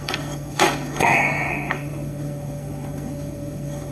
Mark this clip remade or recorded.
remade